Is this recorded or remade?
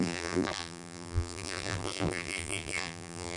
remade